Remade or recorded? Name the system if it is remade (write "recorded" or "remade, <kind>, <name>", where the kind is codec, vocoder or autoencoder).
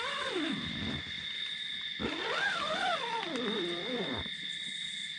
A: recorded